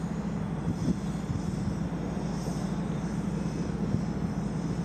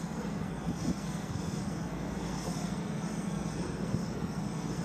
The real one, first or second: first